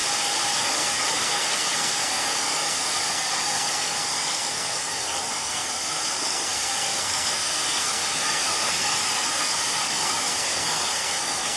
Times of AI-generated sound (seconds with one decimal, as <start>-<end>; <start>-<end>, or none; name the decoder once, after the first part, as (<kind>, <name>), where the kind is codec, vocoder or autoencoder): 0.5-11.6 (codec, SNAC)